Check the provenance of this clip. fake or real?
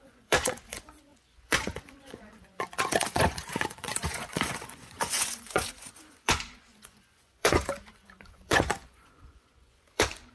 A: fake